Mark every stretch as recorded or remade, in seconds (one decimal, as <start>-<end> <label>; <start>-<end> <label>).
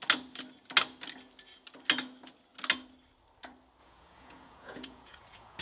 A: 0.0-3.8 recorded; 3.8-5.6 remade